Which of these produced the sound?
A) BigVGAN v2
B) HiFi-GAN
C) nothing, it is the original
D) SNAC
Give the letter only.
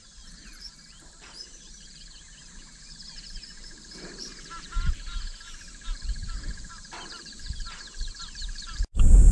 A